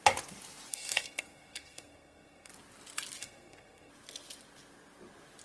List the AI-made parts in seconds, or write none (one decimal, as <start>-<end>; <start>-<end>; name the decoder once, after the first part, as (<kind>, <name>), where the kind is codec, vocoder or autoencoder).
0.7-2.5 (codec, SNAC); 3.2-3.9